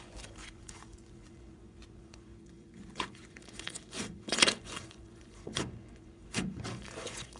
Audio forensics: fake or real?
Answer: fake